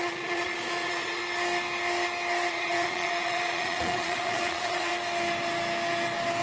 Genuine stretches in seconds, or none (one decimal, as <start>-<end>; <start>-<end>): 1.2-2.5; 4.9-6.4